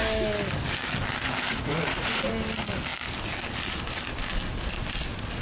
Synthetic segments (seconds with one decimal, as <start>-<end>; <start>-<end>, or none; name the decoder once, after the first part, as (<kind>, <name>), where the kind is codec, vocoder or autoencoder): 1.5-2.3 (vocoder, Vocos)